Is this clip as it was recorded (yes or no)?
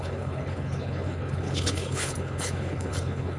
no